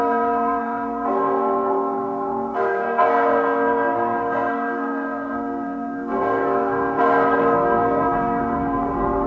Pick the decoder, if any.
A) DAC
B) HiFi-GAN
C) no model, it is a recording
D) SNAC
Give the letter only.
D